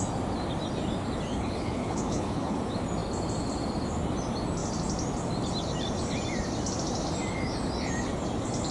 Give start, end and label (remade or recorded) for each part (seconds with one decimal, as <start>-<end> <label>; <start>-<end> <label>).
0.0-1.3 recorded; 1.3-2.6 remade; 2.6-8.7 recorded